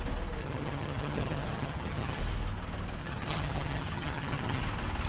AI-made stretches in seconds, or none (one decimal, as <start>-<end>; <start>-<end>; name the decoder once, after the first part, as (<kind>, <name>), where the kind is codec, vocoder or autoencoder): 0.4-2.2 (vocoder, HiFi-GAN); 3.0-4.6